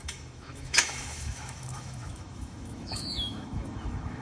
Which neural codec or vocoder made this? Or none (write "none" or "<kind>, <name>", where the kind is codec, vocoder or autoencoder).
autoencoder, DAC-VAE